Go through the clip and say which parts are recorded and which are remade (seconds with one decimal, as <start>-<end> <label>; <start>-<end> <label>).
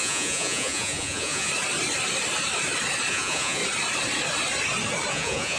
0.0-1.5 remade; 1.5-3.1 recorded; 3.1-3.6 remade; 3.6-5.1 recorded; 5.1-5.6 remade